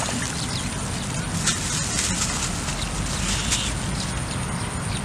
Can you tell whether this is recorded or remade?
recorded